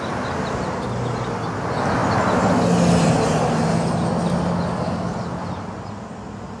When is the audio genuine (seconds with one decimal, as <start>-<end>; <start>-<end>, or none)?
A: 0.0-6.6